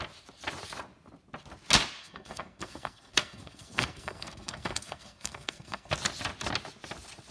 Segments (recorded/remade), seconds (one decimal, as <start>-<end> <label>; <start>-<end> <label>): 0.0-2.0 recorded; 2.0-5.9 remade; 5.9-7.3 recorded